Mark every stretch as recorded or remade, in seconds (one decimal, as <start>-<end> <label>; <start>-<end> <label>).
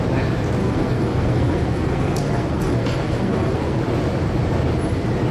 0.0-0.6 recorded; 0.6-3.8 remade; 3.8-5.3 recorded